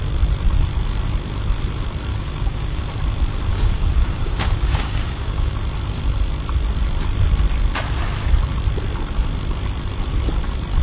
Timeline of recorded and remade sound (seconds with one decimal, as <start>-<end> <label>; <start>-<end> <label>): 0.0-2.1 recorded; 2.1-2.8 remade; 2.8-3.5 recorded; 3.5-5.5 remade; 5.5-10.8 recorded